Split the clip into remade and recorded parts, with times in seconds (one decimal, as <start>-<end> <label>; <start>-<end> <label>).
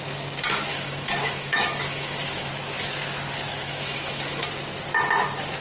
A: 0.0-0.7 recorded; 0.7-2.5 remade; 2.5-3.6 recorded; 3.6-4.5 remade; 4.5-5.6 recorded